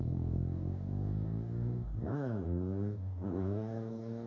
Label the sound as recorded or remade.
remade